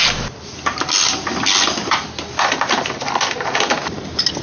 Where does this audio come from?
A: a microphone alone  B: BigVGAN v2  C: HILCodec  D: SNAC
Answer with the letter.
A